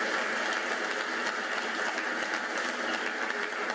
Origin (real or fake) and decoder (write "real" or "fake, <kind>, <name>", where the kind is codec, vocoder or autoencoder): real